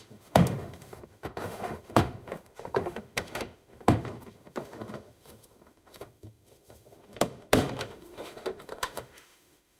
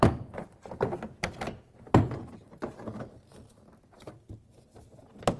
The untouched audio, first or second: second